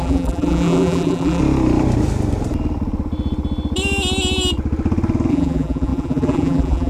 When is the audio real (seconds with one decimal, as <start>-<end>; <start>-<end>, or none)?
1.4-5.3